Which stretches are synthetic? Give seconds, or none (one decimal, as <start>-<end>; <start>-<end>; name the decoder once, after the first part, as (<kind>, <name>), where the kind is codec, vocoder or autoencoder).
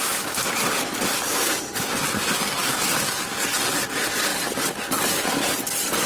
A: none